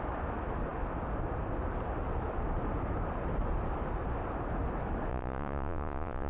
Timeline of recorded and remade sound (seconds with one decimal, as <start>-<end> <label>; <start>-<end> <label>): 0.0-5.1 recorded; 5.1-6.3 remade